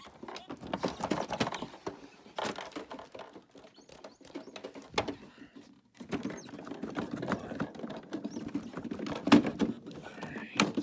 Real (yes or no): yes